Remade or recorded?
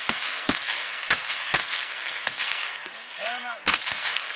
remade